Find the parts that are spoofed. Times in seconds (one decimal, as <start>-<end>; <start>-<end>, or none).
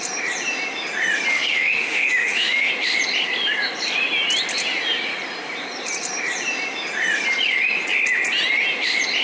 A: 1.3-2.7